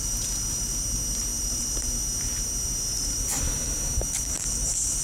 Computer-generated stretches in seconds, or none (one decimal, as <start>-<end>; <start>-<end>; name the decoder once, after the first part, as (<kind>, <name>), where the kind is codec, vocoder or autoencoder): none